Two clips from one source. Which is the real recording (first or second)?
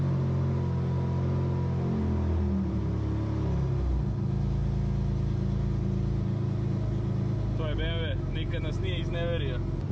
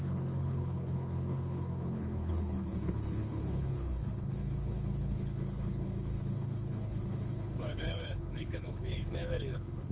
first